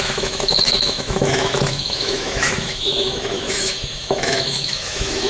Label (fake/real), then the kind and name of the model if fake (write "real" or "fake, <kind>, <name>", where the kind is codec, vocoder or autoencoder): fake, autoencoder, DAC-VAE